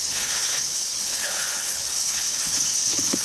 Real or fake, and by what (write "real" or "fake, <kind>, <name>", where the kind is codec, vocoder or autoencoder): fake, codec, HILCodec